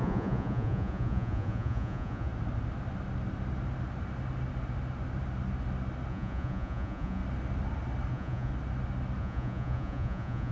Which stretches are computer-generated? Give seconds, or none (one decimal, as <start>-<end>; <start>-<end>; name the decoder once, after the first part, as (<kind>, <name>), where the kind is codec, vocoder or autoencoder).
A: 0.0-2.3 (vocoder, Vocos); 6.1-7.2; 8.1-8.5; 9.2-10.5